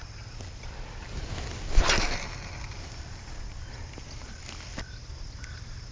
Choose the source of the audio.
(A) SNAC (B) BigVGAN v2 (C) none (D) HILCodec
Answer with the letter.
C